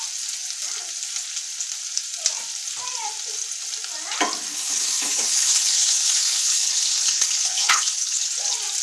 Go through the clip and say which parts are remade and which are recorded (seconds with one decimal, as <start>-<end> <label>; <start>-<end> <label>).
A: 0.0-4.5 recorded; 4.5-8.3 remade; 8.3-8.8 recorded